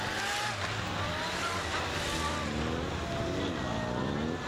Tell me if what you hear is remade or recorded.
recorded